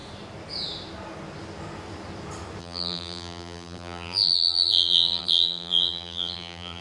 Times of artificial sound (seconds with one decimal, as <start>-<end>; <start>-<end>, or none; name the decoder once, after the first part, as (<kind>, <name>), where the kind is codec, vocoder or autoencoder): 2.6-6.8 (vocoder, BigVGAN v2)